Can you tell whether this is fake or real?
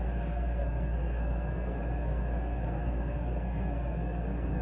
fake